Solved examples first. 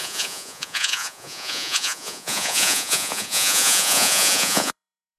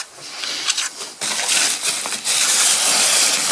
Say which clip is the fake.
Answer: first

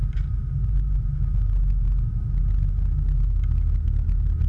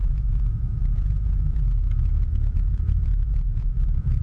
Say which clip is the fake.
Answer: second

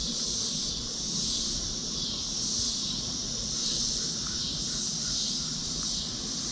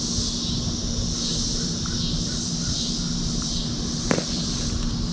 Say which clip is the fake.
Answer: first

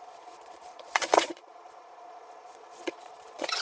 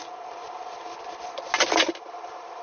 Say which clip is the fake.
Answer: first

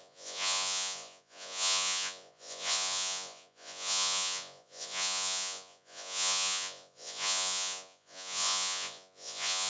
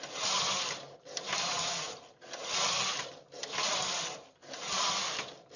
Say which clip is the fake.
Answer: first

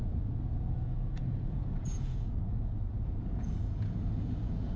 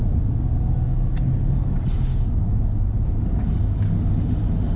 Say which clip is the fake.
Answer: first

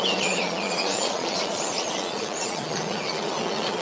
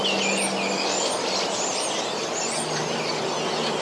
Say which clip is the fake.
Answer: first